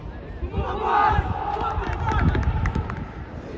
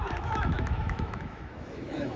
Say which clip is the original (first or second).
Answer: first